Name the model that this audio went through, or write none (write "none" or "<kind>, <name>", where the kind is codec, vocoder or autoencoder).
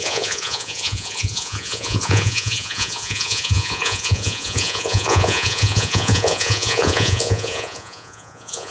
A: vocoder, Vocos